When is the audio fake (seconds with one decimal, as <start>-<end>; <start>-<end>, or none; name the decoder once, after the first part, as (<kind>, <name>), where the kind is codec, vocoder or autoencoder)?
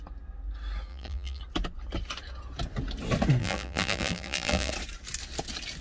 0.9-1.4 (vocoder, BigVGAN v2); 3.4-4.7